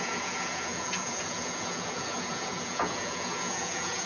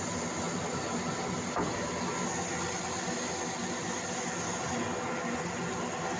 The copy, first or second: first